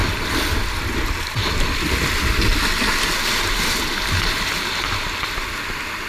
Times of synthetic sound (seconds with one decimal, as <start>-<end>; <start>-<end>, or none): 0.0-2.3